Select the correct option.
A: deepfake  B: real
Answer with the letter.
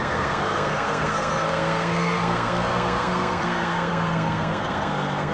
A